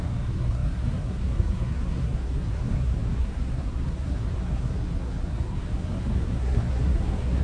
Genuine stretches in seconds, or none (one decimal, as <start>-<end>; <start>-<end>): none